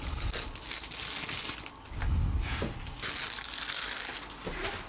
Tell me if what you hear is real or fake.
real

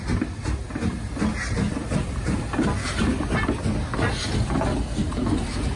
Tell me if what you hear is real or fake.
real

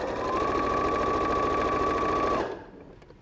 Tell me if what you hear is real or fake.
real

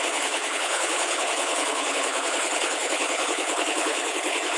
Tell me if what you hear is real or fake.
fake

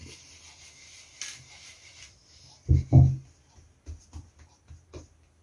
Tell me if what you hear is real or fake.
real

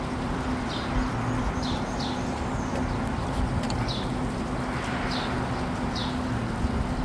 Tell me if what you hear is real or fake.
real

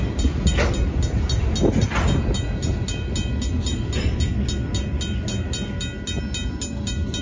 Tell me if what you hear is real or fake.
real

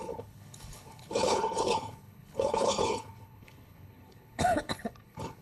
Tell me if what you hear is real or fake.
fake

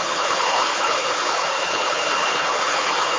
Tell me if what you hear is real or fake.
fake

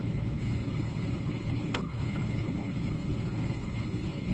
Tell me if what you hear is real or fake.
fake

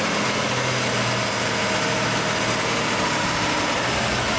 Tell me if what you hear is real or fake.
real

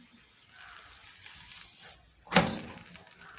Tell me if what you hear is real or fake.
real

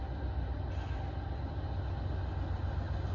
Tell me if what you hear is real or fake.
real